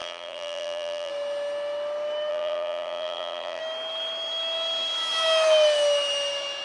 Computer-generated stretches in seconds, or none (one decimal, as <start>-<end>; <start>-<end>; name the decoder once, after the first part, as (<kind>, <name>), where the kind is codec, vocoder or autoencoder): 0.0-1.1 (vocoder, BigVGAN v2); 2.3-3.6